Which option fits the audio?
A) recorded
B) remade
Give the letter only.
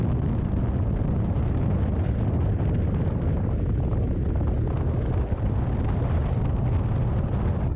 A